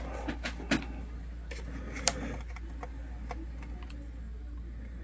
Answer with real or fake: real